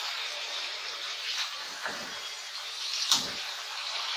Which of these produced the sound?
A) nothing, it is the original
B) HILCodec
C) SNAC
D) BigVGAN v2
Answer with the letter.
D